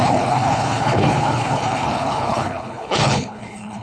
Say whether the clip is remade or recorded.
remade